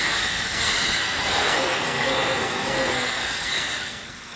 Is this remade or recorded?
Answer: remade